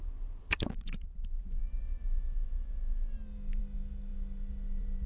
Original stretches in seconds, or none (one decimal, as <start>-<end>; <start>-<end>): 0.0-5.1